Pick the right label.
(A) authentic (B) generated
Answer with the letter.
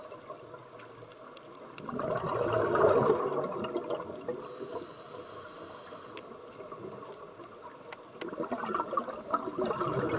A